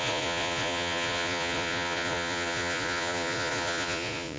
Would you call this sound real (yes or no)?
no